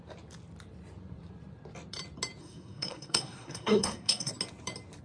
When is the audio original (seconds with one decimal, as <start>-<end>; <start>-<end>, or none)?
0.0-2.4; 4.3-5.0